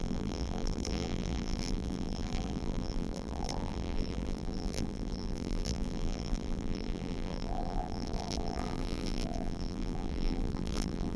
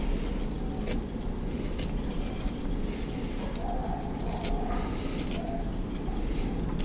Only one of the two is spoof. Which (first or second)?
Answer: first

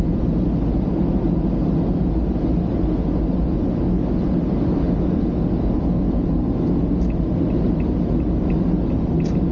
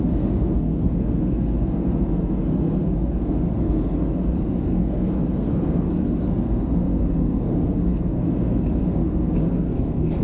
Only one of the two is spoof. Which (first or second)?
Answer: second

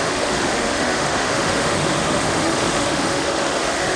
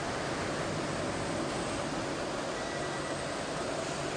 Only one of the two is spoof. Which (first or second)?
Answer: first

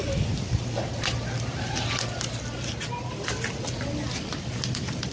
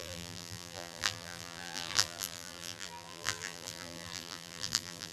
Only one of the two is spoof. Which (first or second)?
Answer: second